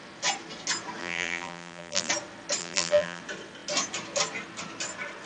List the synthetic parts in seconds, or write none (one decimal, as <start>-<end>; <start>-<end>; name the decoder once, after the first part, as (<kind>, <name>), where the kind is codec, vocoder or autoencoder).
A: 1.0-2.1 (vocoder, BigVGAN v2); 2.6-3.2